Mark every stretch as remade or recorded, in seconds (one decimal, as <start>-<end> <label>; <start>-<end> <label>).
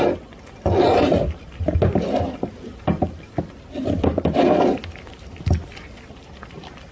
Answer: 0.0-6.9 recorded